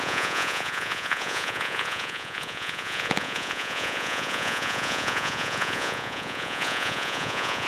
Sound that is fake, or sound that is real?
fake